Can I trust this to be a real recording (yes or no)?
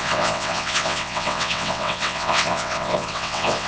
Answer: no